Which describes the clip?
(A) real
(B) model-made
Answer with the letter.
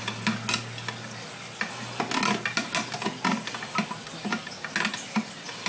A